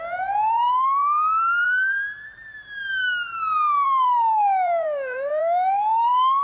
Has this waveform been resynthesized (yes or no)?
yes